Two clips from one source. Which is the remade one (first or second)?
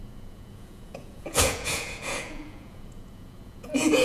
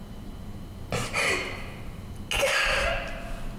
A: first